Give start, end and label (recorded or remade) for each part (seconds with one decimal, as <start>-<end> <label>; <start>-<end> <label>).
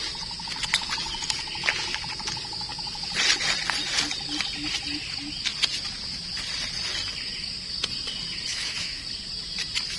0.0-8.5 recorded; 8.5-9.0 remade; 9.0-10.0 recorded